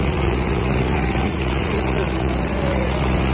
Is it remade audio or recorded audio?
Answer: remade